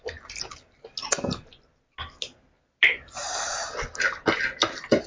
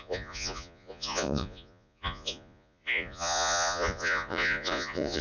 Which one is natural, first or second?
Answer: first